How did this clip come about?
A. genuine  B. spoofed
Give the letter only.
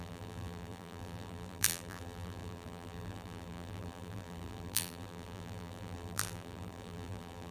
B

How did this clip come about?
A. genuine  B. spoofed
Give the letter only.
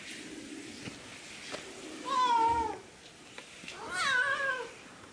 A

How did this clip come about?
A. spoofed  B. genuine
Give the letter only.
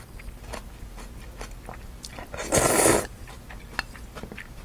B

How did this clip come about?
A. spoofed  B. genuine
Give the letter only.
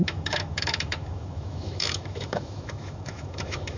A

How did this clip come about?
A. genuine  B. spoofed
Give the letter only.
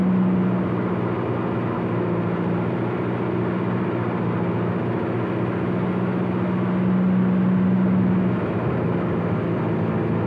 A